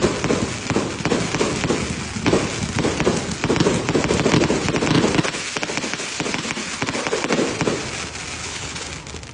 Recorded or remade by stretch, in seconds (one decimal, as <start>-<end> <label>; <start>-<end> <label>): 0.0-8.4 recorded; 8.4-8.9 remade; 8.9-9.3 recorded